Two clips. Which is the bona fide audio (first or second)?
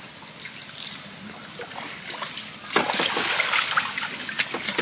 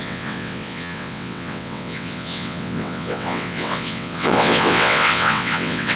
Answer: first